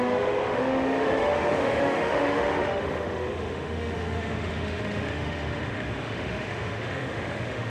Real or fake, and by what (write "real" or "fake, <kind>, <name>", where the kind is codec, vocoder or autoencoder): fake, autoencoder, DAC-VAE